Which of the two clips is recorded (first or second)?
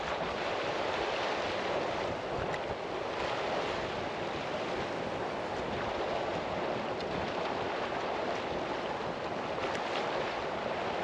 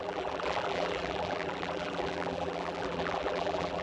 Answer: first